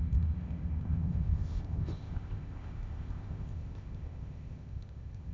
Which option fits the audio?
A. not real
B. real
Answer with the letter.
A